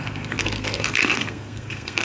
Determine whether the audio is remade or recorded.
remade